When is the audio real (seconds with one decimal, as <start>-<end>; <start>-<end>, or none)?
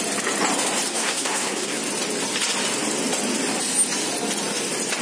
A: 0.0-0.9; 1.8-5.0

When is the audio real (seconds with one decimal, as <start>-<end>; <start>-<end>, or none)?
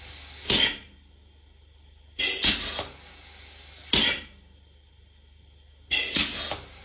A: 0.0-6.8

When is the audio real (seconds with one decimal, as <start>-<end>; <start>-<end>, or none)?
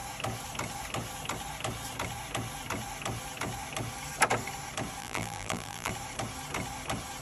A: 0.0-5.0; 5.9-7.2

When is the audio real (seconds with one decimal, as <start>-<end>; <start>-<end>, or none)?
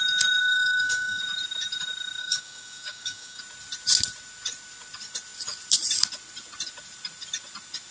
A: 0.0-0.4; 1.2-2.2; 3.4-7.9